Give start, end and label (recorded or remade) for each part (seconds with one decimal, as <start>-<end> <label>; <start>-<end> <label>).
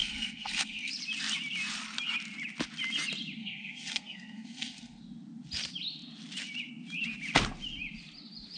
0.0-0.9 remade; 0.9-3.4 recorded; 3.4-5.0 remade; 5.0-8.6 recorded